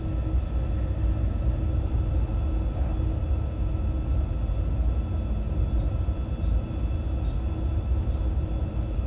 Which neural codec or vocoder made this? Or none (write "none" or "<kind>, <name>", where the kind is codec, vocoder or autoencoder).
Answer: none